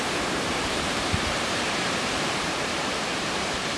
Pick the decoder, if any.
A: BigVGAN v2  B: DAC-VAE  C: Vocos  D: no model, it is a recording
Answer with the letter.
A